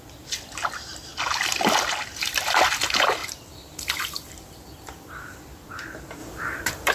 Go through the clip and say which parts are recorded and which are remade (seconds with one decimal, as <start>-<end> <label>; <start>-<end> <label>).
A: 0.0-3.2 recorded; 3.2-5.7 remade; 5.7-6.2 recorded; 6.2-6.9 remade